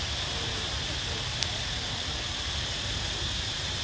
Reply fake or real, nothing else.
fake